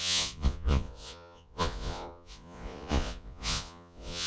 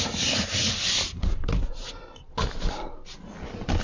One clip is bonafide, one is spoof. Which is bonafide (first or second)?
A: second